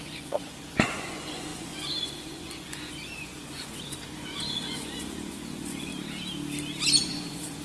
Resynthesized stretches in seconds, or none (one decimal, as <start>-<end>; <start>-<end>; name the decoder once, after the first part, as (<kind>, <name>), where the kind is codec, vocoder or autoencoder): 0.0-5.9 (vocoder, Vocos); 7.0-7.6